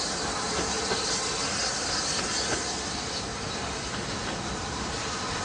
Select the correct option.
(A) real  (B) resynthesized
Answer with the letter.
A